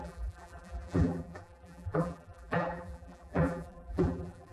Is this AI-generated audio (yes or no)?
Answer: yes